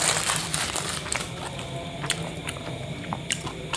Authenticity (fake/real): fake